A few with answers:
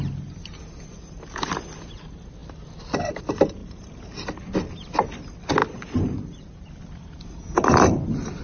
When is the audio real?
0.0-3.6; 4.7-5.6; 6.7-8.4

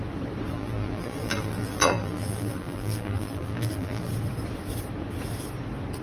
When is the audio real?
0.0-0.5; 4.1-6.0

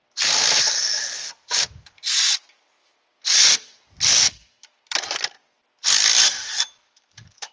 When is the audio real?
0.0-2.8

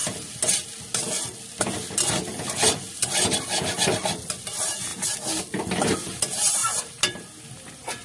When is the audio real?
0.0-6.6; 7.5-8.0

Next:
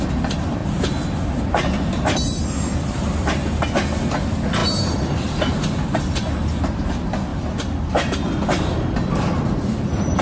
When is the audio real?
0.0-0.6; 3.5-7.3